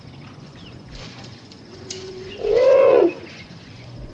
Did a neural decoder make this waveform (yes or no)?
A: yes